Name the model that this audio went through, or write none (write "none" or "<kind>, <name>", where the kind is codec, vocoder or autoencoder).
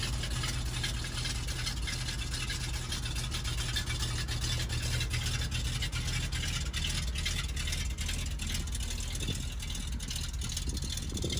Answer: none